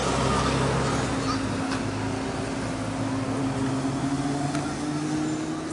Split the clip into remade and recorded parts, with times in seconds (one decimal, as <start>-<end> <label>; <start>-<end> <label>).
0.0-5.7 recorded